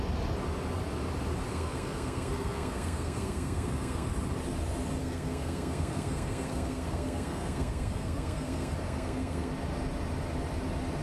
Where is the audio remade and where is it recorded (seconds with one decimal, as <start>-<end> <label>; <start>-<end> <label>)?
0.0-1.5 recorded; 1.5-4.1 remade; 4.1-5.0 recorded; 5.0-9.5 remade; 9.5-11.0 recorded